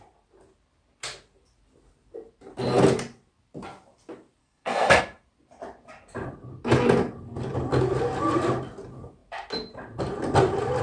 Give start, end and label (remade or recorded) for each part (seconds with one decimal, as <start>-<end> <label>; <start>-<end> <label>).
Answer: 0.0-4.4 recorded; 4.4-5.0 remade; 5.0-10.8 recorded